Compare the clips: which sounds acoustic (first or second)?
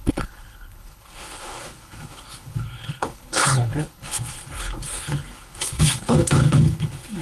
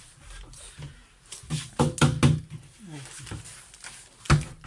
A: second